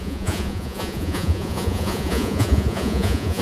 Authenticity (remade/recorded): remade